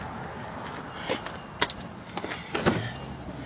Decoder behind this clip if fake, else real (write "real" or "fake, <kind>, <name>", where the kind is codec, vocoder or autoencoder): real